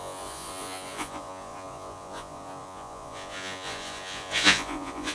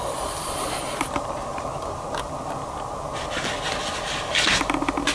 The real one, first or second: second